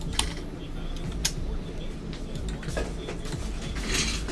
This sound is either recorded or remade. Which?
recorded